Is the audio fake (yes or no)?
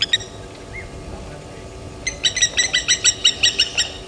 no